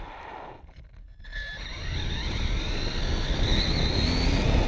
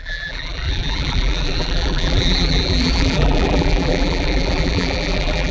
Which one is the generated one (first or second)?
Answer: second